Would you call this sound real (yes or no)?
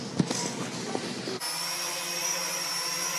yes